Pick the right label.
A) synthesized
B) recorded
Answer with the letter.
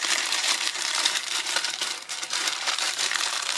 A